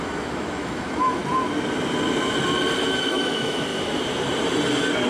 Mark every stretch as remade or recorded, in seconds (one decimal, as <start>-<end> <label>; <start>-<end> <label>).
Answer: 0.0-1.2 remade; 1.2-3.0 recorded; 3.0-3.7 remade; 3.7-5.1 recorded